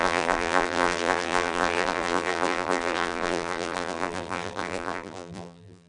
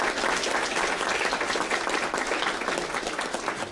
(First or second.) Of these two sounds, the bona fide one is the second